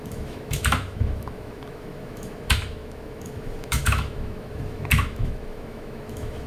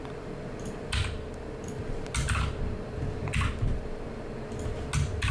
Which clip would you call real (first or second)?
second